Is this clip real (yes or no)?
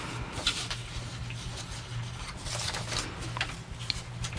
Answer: yes